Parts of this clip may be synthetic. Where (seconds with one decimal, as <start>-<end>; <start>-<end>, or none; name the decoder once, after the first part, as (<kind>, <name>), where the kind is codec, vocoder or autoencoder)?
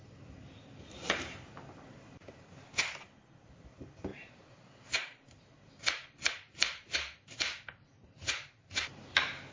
4.1-9.0 (vocoder, BigVGAN v2)